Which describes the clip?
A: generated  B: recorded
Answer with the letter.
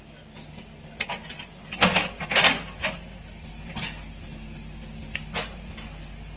B